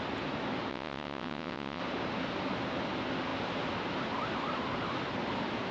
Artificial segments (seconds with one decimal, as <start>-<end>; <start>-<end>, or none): 0.7-1.8